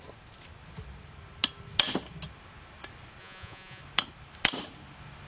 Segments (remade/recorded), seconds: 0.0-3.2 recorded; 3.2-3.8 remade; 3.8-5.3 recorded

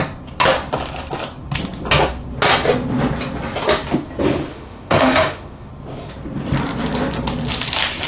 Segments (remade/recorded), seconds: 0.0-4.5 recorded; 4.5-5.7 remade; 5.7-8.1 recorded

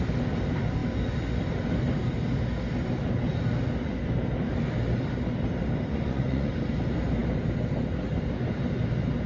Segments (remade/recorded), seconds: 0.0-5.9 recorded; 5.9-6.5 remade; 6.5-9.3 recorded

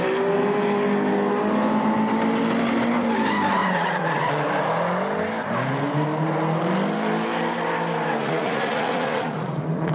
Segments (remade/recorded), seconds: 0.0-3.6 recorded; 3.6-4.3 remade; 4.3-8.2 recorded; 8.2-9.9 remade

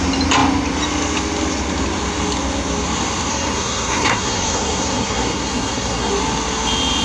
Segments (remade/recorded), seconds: 0.0-3.3 recorded; 3.3-6.1 remade; 6.1-7.0 recorded

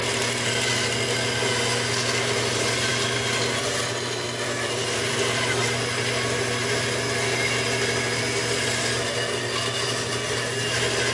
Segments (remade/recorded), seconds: 0.0-11.1 recorded

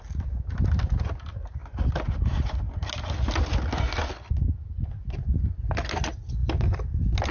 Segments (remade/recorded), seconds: 0.0-7.3 recorded